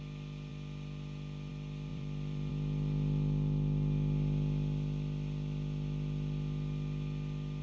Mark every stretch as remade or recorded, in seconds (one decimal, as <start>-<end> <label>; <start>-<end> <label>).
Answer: 0.0-1.9 recorded; 1.9-2.5 remade; 2.5-7.6 recorded